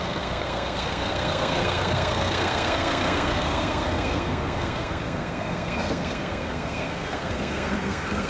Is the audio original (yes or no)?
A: no